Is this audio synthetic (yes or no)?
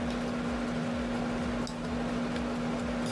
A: no